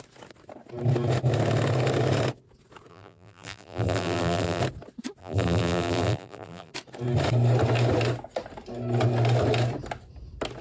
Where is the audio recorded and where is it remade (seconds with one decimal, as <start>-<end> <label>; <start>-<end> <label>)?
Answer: 0.0-2.9 recorded; 2.9-4.6 remade; 4.6-5.2 recorded; 5.2-6.7 remade; 6.7-10.6 recorded